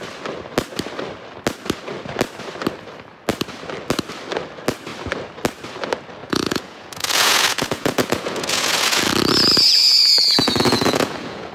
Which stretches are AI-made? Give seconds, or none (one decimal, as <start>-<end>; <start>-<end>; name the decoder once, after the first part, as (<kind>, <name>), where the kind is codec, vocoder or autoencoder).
6.2-9.0 (vocoder, Vocos); 9.8-11.5